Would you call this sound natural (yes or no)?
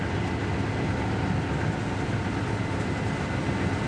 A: yes